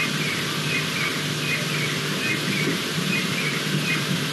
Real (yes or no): yes